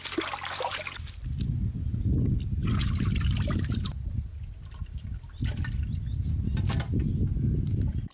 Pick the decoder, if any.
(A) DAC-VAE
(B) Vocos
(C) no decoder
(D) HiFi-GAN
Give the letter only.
C